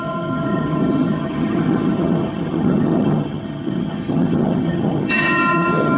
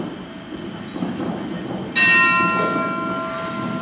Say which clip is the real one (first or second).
second